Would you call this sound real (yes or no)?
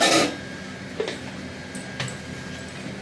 yes